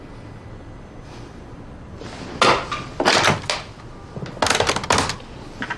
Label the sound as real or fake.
real